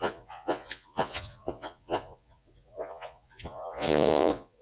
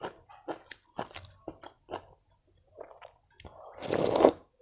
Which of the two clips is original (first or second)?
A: second